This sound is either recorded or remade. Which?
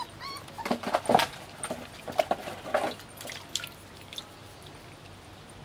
recorded